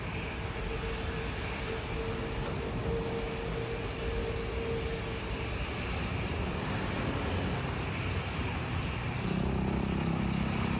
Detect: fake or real real